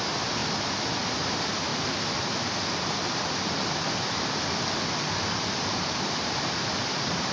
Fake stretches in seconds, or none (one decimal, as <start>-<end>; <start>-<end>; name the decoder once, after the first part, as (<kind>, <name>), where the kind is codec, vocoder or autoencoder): 0.0-0.4 (vocoder, BigVGAN v2); 1.0-1.7; 5.5-7.3